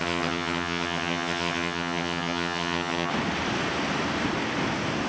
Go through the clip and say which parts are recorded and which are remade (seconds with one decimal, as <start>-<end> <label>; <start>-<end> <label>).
0.0-3.1 remade; 3.1-5.1 recorded